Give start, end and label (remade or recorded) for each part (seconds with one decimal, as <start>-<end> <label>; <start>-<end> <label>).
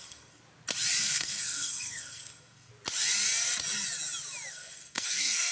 0.0-0.4 remade; 0.4-1.0 recorded; 1.0-2.7 remade; 2.7-4.5 recorded; 4.5-5.5 remade